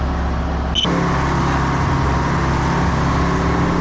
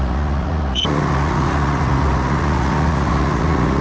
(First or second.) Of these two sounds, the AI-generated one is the second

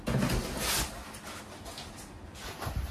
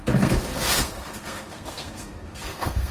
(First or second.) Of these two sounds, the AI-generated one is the second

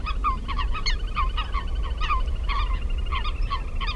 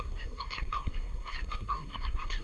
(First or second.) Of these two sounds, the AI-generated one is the second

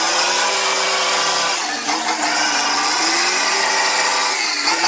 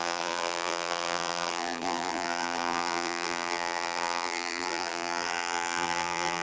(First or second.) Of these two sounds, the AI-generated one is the second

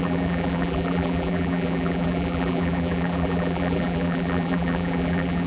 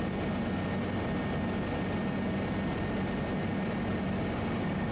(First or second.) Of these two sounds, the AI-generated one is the first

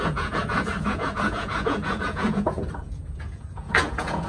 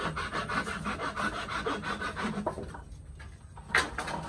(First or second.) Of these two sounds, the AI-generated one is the first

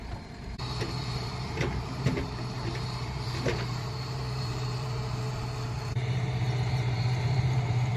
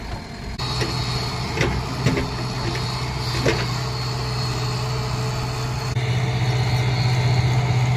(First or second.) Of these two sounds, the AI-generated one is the first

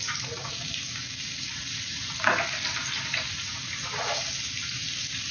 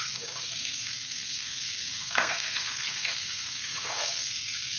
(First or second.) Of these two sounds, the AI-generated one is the second